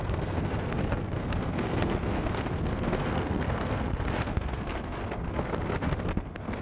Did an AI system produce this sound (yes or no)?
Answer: yes